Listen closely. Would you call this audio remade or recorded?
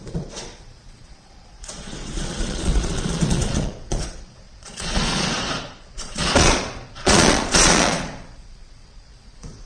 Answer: remade